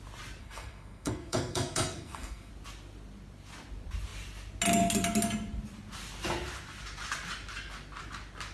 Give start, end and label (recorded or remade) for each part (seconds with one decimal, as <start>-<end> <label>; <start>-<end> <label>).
0.0-0.4 recorded; 0.4-2.5 remade; 2.5-8.5 recorded